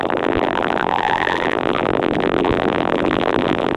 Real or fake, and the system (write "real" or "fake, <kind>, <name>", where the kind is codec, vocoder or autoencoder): fake, vocoder, BigVGAN v2